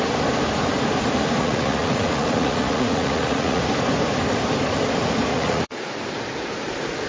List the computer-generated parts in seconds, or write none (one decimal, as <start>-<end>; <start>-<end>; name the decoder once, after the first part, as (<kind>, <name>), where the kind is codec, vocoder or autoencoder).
1.4-3.6 (vocoder, Vocos); 5.3-5.9